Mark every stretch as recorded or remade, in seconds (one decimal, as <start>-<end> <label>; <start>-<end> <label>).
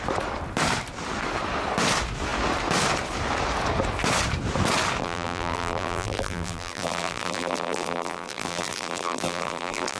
0.0-5.0 recorded; 5.0-10.0 remade